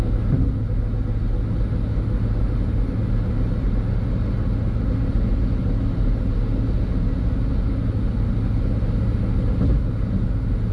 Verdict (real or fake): real